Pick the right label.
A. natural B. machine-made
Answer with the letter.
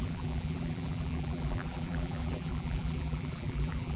B